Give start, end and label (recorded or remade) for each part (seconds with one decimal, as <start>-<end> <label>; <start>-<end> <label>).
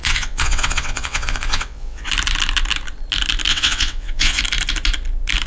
0.0-2.1 remade; 2.1-3.5 recorded; 3.5-4.4 remade; 4.4-5.5 recorded